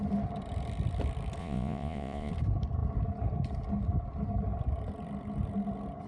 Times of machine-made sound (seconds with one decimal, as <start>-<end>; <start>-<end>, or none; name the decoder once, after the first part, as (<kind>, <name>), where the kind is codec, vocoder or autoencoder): 1.4-2.3 (vocoder, Vocos)